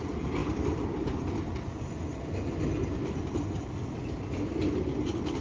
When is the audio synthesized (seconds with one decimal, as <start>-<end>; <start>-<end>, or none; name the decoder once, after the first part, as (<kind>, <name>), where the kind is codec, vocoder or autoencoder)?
0.4-0.9 (vocoder, BigVGAN v2)

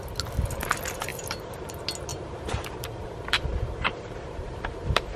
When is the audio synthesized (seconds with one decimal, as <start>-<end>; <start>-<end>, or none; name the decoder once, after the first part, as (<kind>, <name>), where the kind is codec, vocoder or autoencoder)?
1.1-1.6 (vocoder, BigVGAN v2); 2.1-5.2